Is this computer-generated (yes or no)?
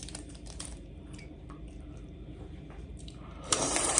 yes